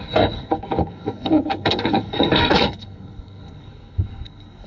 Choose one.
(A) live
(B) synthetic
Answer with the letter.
B